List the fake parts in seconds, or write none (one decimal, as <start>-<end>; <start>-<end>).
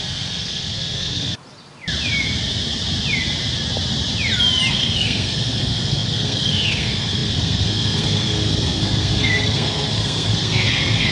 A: 0.0-1.4; 4.7-11.1